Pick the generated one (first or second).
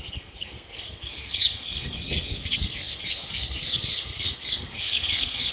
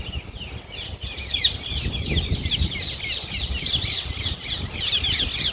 first